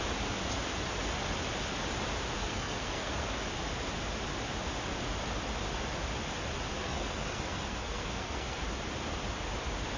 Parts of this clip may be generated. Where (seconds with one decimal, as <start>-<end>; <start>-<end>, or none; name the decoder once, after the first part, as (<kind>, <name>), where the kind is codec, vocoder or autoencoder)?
2.4-3.4 (codec, SNAC); 6.7-8.6